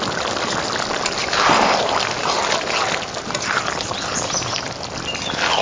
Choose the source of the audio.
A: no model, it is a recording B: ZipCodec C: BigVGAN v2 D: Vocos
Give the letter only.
A